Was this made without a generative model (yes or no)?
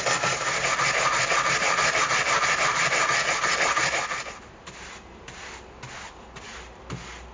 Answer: yes